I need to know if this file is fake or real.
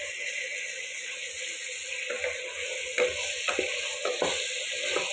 real